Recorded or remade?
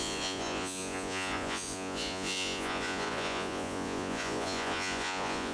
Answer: remade